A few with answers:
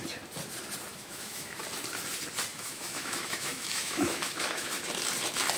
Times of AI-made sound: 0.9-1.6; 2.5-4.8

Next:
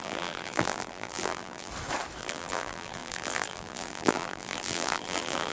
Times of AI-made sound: 0.0-1.7; 2.2-5.5